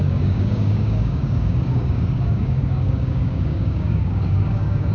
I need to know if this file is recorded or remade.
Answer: remade